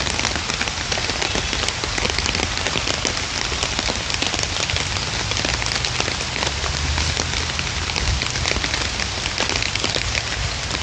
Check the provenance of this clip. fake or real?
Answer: real